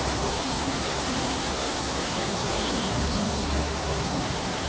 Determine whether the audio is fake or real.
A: fake